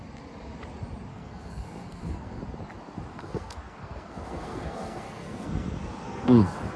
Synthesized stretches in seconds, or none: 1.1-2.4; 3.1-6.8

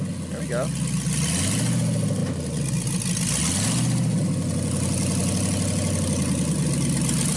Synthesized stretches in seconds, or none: none

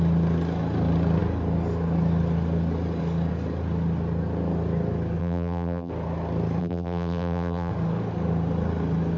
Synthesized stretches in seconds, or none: 5.2-5.9; 6.6-7.7